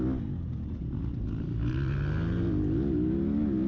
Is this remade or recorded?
recorded